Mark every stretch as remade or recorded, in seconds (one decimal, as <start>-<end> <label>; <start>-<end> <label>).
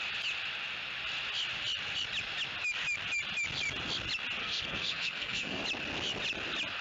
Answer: 0.0-4.4 recorded; 4.4-5.6 remade; 5.6-6.8 recorded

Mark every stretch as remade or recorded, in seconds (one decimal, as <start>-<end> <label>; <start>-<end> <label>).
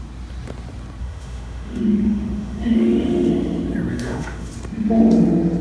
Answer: 0.0-1.0 recorded; 1.0-3.3 remade; 3.3-3.9 recorded; 3.9-4.5 remade; 4.5-5.6 recorded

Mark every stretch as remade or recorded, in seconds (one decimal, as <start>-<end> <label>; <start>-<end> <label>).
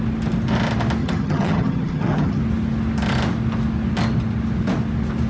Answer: 0.0-1.0 recorded; 1.0-2.4 remade; 2.4-5.3 recorded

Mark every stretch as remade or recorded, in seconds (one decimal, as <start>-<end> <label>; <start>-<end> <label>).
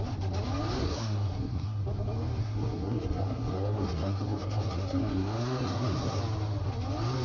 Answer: 0.0-0.8 recorded; 0.8-1.8 remade; 1.8-2.4 recorded; 2.4-6.2 remade; 6.2-7.2 recorded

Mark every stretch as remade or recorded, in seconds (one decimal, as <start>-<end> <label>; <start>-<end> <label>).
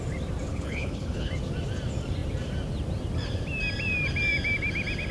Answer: 0.0-0.5 recorded; 0.5-1.3 remade; 1.3-5.1 recorded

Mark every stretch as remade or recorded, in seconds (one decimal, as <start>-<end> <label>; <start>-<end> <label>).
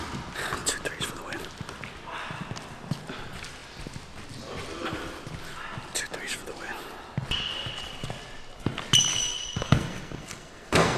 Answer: 0.0-9.1 recorded; 9.1-11.0 remade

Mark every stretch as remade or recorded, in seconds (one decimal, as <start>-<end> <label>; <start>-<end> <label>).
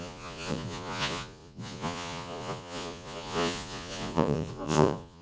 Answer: 0.0-5.2 remade